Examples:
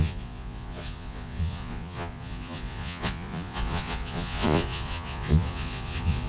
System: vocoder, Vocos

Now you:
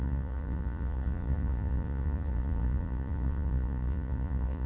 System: vocoder, Vocos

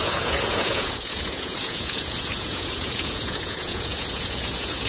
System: vocoder, Vocos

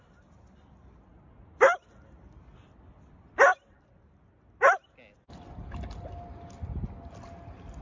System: none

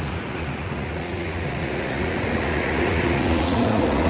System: vocoder, Vocos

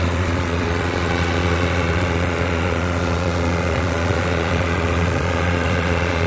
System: vocoder, Vocos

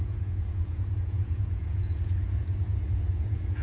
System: vocoder, Vocos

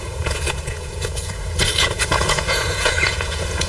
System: vocoder, Vocos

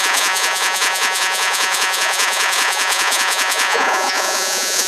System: vocoder, Vocos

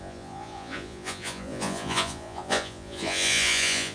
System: vocoder, Vocos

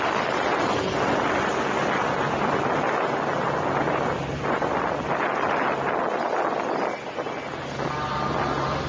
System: none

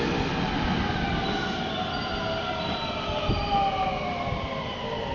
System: none